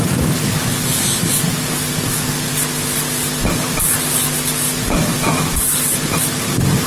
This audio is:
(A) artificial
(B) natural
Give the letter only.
B